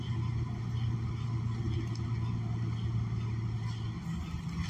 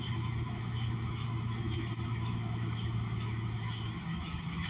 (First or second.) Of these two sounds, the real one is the first